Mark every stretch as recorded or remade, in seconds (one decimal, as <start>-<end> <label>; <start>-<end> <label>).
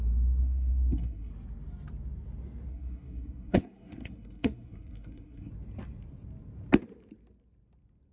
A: 0.0-0.4 recorded; 0.4-1.3 remade; 1.3-2.7 recorded; 2.7-5.5 remade; 5.5-8.1 recorded